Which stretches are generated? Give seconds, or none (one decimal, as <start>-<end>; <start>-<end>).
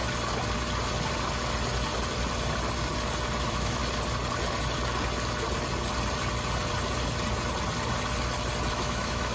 3.4-3.8; 8.7-9.3